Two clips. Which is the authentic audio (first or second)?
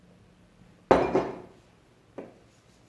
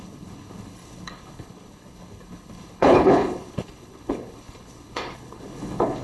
first